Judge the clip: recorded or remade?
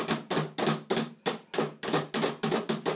recorded